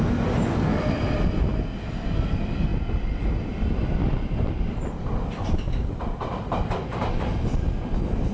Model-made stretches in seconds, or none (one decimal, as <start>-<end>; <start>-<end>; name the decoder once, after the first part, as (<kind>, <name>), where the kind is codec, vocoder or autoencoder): 0.7-2.3 (vocoder, BigVGAN v2); 2.7-7.1